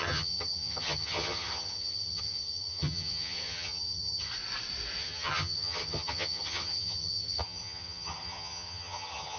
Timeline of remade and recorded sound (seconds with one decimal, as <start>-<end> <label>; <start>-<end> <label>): 0.0-4.3 remade; 4.3-5.0 recorded; 5.0-9.4 remade